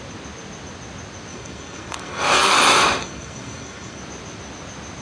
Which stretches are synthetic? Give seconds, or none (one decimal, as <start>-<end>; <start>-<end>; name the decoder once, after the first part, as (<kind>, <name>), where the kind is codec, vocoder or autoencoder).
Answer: 1.3-2.6 (codec, SNAC); 3.0-4.0